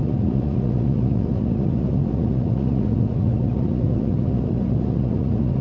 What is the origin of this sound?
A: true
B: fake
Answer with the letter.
B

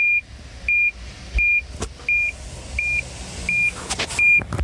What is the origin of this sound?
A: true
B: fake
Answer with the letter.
A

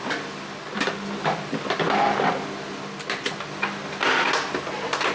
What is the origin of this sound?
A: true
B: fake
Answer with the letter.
A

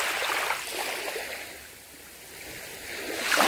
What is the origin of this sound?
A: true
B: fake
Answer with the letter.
A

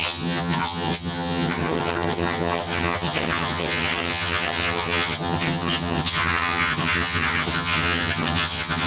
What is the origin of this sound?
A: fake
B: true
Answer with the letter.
A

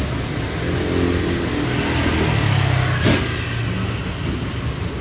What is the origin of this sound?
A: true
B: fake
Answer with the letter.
A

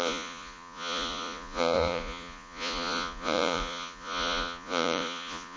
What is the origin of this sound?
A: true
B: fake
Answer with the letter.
B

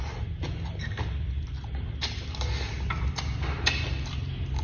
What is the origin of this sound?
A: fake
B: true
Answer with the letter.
B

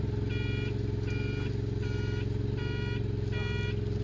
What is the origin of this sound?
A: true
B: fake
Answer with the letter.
A